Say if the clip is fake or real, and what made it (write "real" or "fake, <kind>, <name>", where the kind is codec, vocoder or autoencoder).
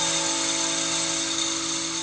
real